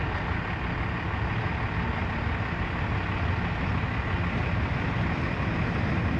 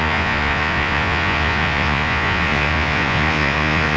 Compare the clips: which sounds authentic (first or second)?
first